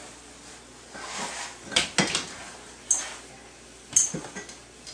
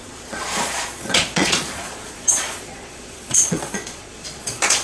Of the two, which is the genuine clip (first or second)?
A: first